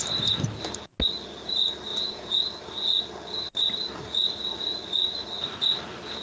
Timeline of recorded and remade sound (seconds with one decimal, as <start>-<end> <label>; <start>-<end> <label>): 0.0-1.9 recorded; 1.9-2.4 remade; 2.4-6.2 recorded

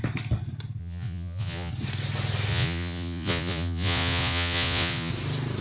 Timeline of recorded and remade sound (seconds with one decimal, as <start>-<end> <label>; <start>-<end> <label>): 0.0-0.8 recorded; 0.8-1.7 remade; 1.7-2.5 recorded; 2.5-5.1 remade; 5.1-5.6 recorded

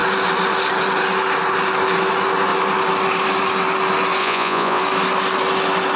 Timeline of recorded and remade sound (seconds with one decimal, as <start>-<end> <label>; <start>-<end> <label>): 0.0-4.2 recorded; 4.2-4.8 remade; 4.8-6.0 recorded

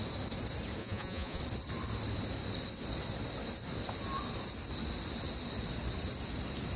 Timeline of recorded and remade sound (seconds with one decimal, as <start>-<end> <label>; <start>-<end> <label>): 0.0-0.8 recorded; 0.8-1.4 remade; 1.4-6.8 recorded

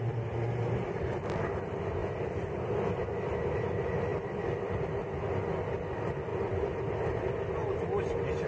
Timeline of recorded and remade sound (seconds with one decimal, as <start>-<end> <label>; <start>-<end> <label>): 0.0-8.5 recorded

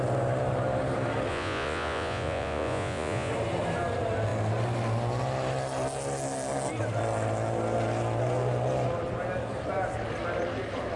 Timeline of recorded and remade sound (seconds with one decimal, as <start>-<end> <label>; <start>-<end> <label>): 0.0-1.3 recorded; 1.3-3.3 remade; 3.3-11.0 recorded

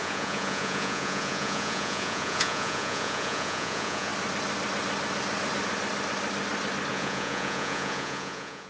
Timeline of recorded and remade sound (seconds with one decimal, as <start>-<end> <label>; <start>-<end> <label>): 0.0-4.1 remade; 4.1-6.9 recorded; 6.9-8.7 remade